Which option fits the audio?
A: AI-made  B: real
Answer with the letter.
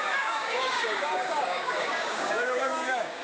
A